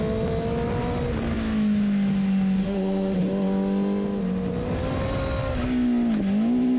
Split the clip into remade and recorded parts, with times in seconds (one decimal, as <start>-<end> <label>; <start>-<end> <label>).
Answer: 0.0-2.6 recorded; 2.6-3.2 remade; 3.2-6.8 recorded